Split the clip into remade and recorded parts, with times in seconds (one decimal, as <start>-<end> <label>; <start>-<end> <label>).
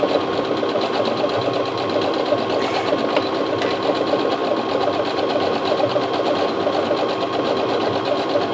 0.0-8.5 recorded